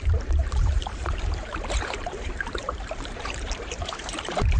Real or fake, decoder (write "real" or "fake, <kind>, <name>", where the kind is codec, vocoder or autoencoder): fake, vocoder, BigVGAN v2